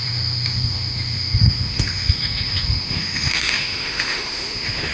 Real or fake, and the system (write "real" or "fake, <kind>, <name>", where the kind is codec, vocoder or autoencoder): fake, autoencoder, DAC-VAE